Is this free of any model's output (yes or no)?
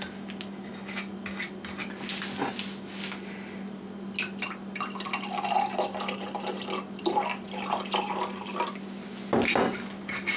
yes